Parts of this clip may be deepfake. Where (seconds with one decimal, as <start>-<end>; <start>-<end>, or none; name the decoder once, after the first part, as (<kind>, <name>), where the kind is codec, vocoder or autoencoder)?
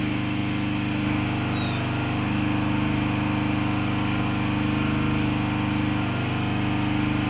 none